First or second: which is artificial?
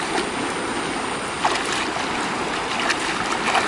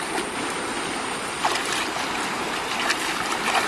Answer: second